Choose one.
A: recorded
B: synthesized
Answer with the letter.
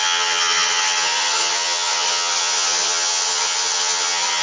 B